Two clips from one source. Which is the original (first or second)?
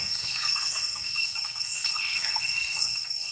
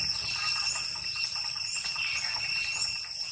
second